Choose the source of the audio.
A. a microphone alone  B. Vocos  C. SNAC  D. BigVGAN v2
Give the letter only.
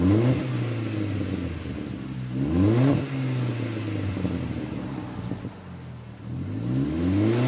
A